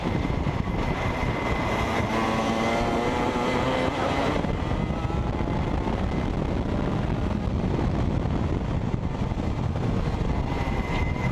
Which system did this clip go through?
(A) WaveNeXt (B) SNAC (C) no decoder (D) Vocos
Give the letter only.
C